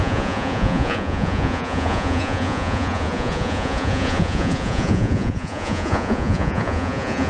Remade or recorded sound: remade